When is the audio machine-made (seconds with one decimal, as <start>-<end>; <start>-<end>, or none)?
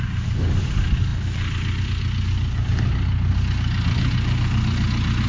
none